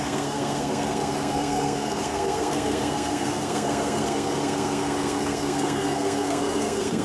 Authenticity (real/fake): fake